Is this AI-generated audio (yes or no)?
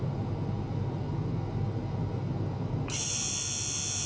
no